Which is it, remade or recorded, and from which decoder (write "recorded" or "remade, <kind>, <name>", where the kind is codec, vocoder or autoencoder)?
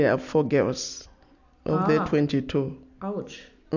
recorded